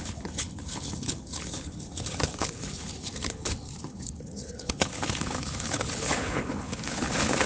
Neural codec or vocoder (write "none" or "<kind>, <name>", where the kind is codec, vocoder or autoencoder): codec, HILCodec